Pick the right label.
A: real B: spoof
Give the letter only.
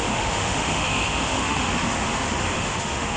B